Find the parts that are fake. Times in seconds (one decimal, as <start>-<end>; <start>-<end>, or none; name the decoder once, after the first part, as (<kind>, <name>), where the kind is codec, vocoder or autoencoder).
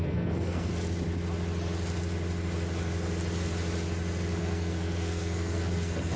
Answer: 0.0-0.7 (codec, SNAC); 4.4-6.2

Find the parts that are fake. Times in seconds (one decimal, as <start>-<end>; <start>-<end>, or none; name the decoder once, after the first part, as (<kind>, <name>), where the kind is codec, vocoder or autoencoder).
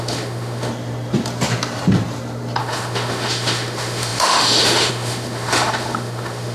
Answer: 0.0-0.7 (autoencoder, DAC-VAE); 2.6-6.5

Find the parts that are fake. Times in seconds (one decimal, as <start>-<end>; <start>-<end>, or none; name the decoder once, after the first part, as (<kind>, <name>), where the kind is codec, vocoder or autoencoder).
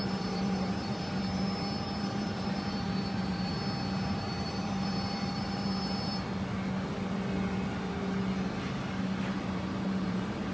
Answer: 0.0-3.5 (vocoder, BigVGAN v2); 4.1-6.1; 9.7-10.5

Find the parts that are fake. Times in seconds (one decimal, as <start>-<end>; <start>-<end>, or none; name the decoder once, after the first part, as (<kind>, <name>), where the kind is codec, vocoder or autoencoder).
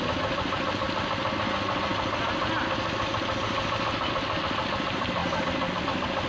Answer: 5.2-5.8 (vocoder, BigVGAN v2)